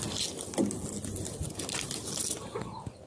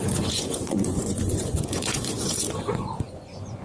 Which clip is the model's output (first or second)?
second